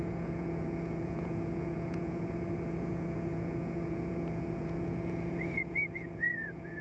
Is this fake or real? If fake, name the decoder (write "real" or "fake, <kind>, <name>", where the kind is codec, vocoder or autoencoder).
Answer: fake, vocoder, Vocos